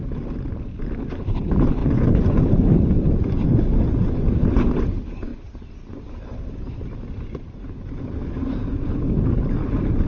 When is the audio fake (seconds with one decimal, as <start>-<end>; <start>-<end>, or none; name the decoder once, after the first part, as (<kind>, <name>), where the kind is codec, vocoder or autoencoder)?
1.8-2.4 (vocoder, Vocos)